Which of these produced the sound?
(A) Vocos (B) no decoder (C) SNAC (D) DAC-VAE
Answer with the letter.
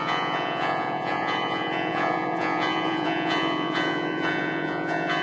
A